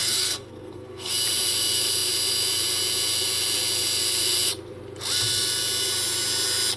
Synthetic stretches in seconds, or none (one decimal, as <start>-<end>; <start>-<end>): 0.0-1.1